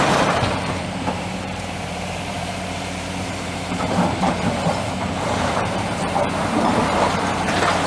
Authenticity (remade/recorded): remade